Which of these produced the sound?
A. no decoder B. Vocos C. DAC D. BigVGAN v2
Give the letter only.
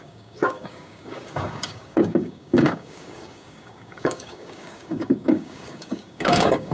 C